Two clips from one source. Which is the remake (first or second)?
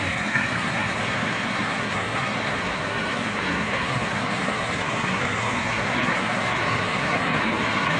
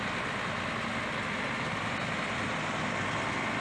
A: first